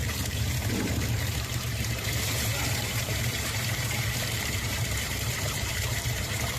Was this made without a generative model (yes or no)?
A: no